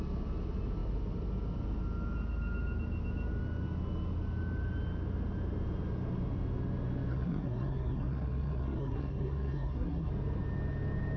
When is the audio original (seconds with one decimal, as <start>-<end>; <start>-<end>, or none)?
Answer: 0.0-7.1; 10.1-11.2